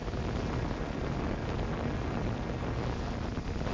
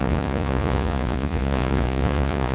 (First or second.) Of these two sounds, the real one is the first